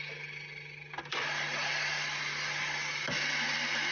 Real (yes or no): yes